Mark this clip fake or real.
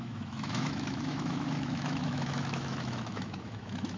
fake